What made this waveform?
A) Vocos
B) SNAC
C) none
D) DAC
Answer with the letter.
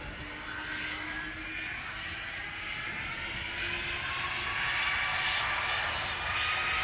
C